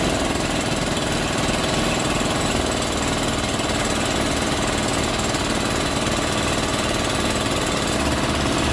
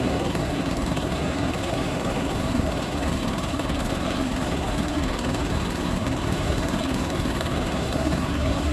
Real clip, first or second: first